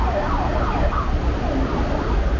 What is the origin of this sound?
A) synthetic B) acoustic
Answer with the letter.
B